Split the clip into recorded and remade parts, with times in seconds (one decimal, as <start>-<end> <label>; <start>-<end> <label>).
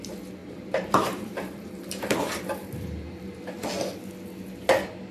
0.0-0.4 recorded; 0.4-3.5 remade; 3.5-5.1 recorded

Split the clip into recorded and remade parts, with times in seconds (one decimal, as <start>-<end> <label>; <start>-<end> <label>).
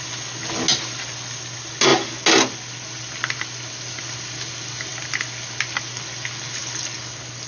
0.0-7.5 recorded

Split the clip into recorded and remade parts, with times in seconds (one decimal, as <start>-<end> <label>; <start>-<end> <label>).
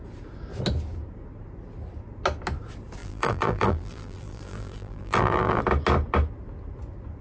0.0-3.0 recorded; 3.0-5.6 remade; 5.6-7.2 recorded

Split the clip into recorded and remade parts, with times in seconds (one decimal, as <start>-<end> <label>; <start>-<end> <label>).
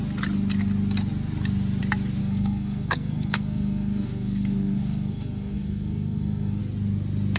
0.0-2.2 recorded; 2.2-6.6 remade; 6.6-7.4 recorded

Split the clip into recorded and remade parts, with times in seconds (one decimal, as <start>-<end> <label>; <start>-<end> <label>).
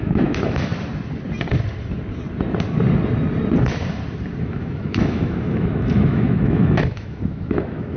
0.0-0.7 remade; 0.7-4.4 recorded; 4.4-8.0 remade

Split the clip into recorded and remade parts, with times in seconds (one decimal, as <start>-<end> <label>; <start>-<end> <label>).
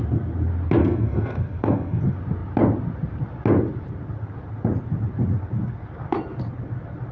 0.0-0.8 recorded; 0.8-2.0 remade; 2.0-7.1 recorded